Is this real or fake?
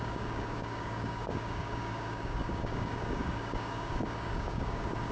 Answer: fake